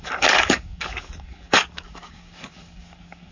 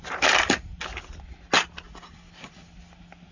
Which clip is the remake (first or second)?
first